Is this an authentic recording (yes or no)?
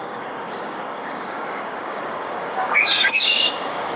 no